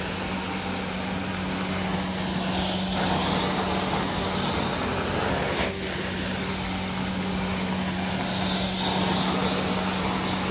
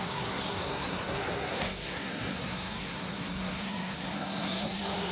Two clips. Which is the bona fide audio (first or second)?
first